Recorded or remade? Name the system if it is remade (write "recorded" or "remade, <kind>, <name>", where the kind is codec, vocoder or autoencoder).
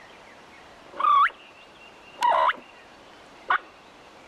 remade, vocoder, BigVGAN v2